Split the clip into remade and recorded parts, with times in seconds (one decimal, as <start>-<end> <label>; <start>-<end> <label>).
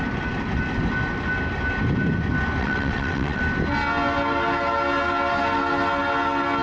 0.0-2.6 recorded; 2.6-3.4 remade; 3.4-6.6 recorded